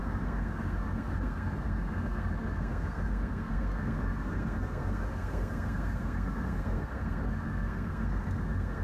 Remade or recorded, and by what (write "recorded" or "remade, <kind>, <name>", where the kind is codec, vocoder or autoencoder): remade, codec, SNAC